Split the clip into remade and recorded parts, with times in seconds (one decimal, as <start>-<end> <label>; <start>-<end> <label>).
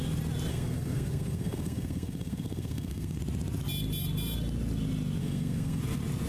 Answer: 0.0-0.5 recorded; 0.5-3.2 remade; 3.2-5.2 recorded; 5.2-5.8 remade; 5.8-6.3 recorded